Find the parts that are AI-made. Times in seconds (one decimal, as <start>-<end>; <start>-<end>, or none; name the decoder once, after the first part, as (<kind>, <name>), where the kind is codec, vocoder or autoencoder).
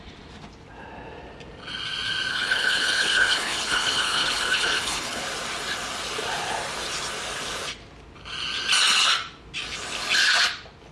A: 2.3-5.2 (codec, HILCodec)